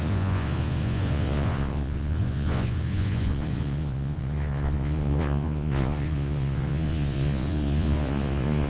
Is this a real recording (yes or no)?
no